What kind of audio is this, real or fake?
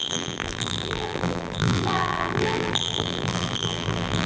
fake